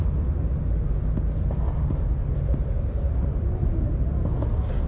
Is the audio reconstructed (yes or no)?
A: no